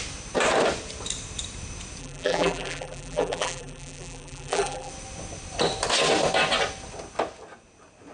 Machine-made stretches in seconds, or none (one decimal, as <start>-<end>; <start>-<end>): 2.0-4.9